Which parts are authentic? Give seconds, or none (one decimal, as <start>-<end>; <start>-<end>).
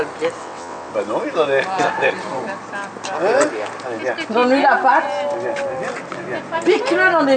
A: 0.0-0.4; 0.9-7.4